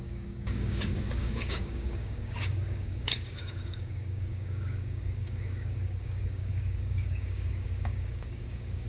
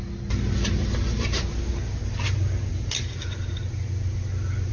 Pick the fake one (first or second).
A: first